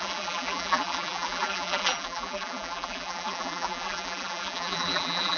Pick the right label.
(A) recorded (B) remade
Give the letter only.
B